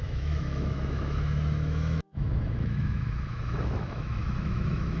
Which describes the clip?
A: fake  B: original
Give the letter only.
A